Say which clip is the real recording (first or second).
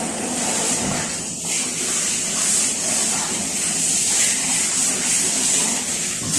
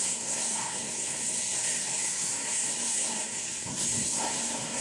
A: first